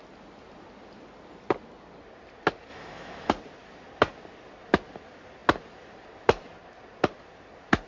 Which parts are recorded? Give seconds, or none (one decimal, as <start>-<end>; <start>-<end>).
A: 0.0-2.7; 3.3-7.9